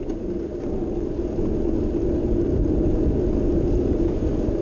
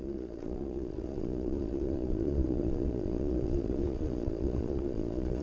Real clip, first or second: first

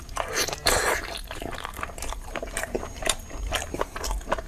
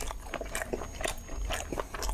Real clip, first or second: second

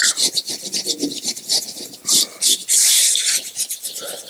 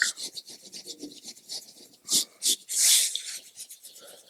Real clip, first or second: second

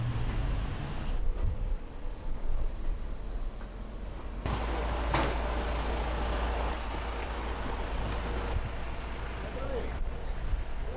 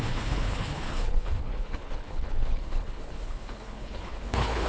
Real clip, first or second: first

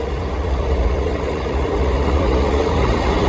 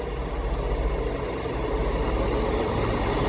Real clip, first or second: second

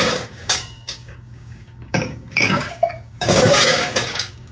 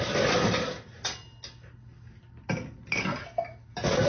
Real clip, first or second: second